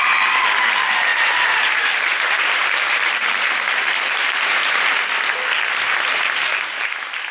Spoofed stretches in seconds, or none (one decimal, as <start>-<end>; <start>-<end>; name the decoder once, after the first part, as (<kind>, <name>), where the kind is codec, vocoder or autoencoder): 1.1-5.1 (vocoder, BigVGAN v2); 6.5-7.3

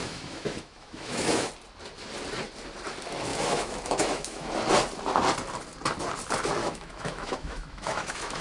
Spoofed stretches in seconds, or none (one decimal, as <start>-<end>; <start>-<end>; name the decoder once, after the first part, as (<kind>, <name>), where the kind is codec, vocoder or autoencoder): 0.0-1.5 (autoencoder, DAC-VAE); 3.3-4.5; 6.6-8.4

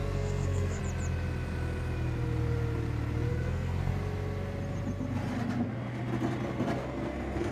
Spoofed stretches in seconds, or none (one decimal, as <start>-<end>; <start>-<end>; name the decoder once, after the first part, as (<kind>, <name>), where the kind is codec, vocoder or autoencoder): 0.0-0.8 (codec, SNAC); 3.3-3.9; 6.8-7.5

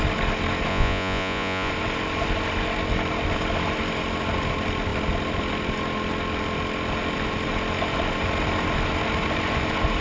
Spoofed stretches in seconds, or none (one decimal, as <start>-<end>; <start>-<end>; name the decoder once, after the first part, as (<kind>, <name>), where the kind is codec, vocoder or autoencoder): 0.7-1.7 (vocoder, Vocos)

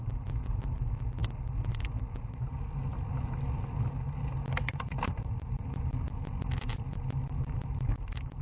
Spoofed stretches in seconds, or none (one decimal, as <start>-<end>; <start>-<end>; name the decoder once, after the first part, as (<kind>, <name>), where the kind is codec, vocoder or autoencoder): none

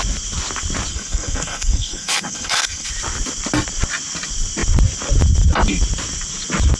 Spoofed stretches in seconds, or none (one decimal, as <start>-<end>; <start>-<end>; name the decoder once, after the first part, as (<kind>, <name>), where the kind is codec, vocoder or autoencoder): 0.9-2.9 (codec, SNAC)

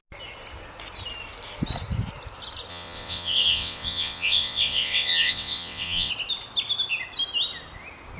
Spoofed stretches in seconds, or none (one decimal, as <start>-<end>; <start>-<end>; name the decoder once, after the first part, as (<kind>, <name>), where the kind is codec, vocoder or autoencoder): 2.7-6.1 (vocoder, WaveNeXt)